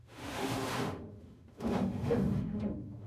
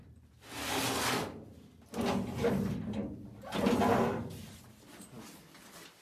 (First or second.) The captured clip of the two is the second